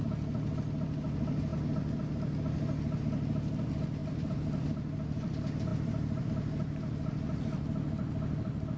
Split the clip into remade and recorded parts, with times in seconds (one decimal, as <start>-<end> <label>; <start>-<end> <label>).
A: 0.0-4.0 recorded; 4.0-5.3 remade; 5.3-5.7 recorded; 5.7-6.3 remade; 6.3-8.8 recorded

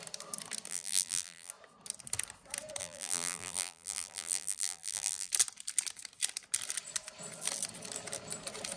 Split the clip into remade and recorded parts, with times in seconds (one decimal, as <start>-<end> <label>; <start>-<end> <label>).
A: 0.0-0.7 recorded; 0.7-1.5 remade; 1.5-2.8 recorded; 2.8-5.3 remade; 5.3-8.8 recorded

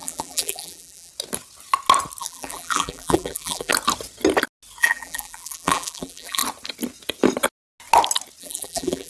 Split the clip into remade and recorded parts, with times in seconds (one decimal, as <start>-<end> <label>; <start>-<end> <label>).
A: 0.0-1.1 remade; 1.1-2.2 recorded; 2.2-3.7 remade; 3.7-4.8 recorded; 4.8-6.4 remade; 6.4-8.4 recorded; 8.4-9.1 remade

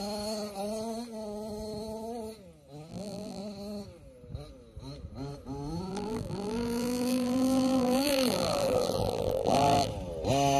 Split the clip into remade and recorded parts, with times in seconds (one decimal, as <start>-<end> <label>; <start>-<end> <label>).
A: 0.0-2.9 recorded; 2.9-3.4 remade; 3.4-5.9 recorded; 5.9-9.9 remade; 9.9-10.6 recorded

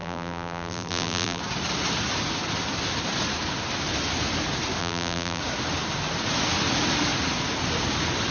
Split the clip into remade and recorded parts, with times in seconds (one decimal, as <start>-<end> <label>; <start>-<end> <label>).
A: 0.0-1.4 remade; 1.4-4.8 recorded; 4.8-5.4 remade; 5.4-8.3 recorded

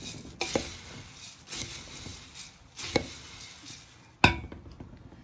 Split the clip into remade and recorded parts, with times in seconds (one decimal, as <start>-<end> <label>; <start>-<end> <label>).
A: 0.0-5.2 recorded

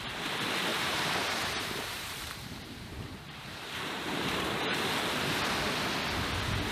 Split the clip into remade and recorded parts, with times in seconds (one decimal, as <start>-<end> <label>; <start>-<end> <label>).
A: 0.0-0.7 recorded; 0.7-4.5 remade; 4.5-6.7 recorded

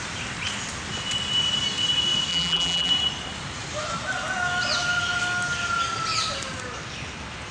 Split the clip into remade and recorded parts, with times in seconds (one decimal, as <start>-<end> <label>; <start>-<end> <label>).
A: 0.0-2.3 recorded; 2.3-2.9 remade; 2.9-7.5 recorded